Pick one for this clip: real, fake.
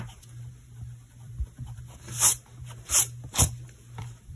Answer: fake